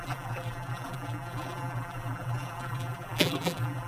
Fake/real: fake